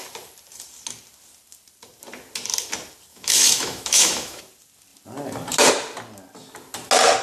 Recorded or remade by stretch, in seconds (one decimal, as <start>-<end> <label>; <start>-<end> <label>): 0.0-3.1 recorded; 3.1-4.4 remade; 4.4-7.2 recorded